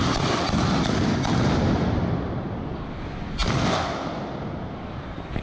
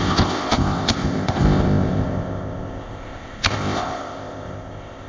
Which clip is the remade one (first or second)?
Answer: second